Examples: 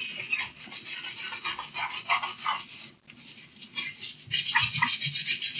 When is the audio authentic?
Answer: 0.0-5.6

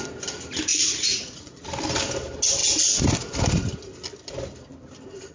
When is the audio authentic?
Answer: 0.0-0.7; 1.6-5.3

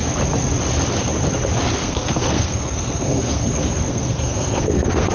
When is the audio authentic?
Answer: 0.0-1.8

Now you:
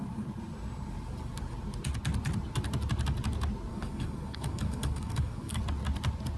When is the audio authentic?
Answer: 0.0-3.7; 5.6-6.4

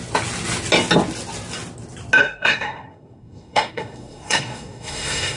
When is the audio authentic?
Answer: 0.0-2.2